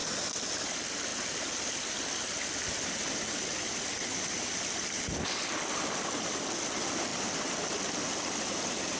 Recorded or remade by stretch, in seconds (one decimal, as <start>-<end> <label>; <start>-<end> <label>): 0.0-9.0 recorded